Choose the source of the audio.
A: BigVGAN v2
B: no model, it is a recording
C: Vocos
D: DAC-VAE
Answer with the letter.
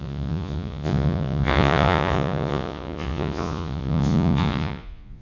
C